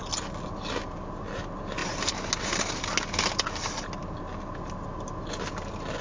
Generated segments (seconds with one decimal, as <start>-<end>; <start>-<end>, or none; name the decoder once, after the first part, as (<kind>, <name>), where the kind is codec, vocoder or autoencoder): none